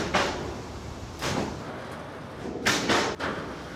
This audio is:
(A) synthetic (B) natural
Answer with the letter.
A